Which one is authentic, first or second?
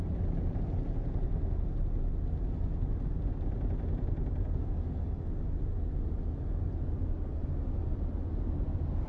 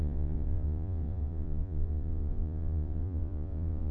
first